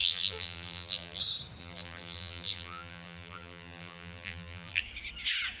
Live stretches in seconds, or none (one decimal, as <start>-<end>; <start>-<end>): 1.2-1.6; 4.8-5.6